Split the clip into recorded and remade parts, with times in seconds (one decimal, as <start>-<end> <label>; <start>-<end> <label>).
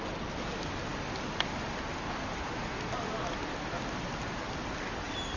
0.0-5.4 recorded